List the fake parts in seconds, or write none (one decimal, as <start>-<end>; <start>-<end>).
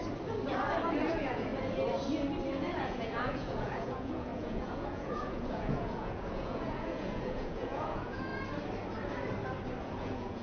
1.1-1.5; 2.8-8.3; 9.8-10.4